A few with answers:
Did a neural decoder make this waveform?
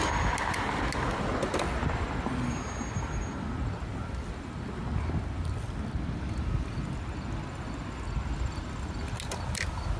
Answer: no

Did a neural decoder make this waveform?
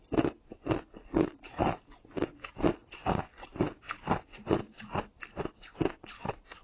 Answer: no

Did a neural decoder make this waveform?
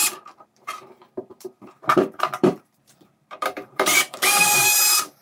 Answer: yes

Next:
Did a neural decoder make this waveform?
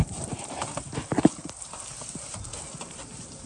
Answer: no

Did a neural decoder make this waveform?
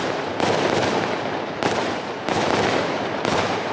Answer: yes